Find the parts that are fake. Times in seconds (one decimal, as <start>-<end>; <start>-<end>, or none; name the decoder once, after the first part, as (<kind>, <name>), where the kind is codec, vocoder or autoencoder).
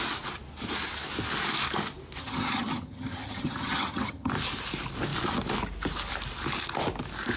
2.2-4.3 (vocoder, HiFi-GAN)